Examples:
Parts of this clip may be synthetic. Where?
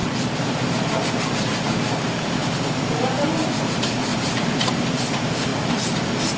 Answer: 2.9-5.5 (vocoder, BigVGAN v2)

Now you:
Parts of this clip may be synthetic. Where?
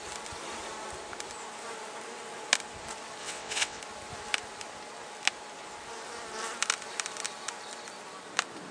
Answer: 3.2-3.8 (vocoder, WaveNeXt)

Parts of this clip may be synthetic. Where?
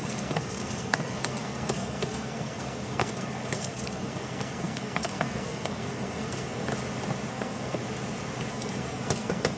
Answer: 0.0-6.7 (codec, SNAC); 7.3-7.8; 8.5-9.6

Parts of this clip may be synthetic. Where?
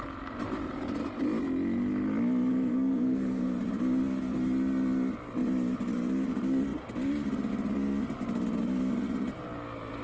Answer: 2.5-3.6 (codec, SNAC)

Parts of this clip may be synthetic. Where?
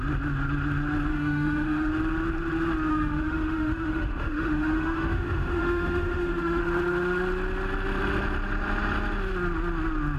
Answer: 1.1-1.9 (autoencoder, DAC-VAE); 2.9-6.6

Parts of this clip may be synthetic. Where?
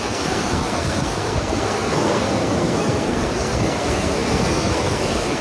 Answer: 0.0-5.4 (codec, SNAC)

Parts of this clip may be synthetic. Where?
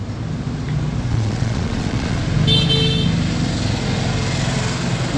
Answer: 1.1-2.2 (vocoder, Vocos)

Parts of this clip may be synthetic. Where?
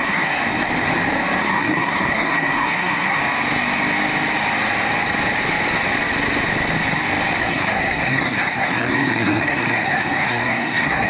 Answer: 0.0-0.4 (codec, SNAC); 1.4-3.2; 7.4-11.1